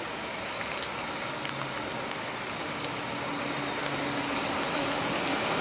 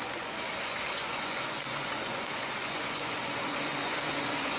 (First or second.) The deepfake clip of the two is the second